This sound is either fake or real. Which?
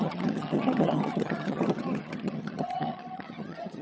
fake